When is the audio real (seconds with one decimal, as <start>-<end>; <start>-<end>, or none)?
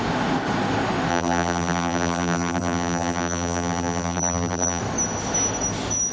0.0-1.1; 4.8-6.1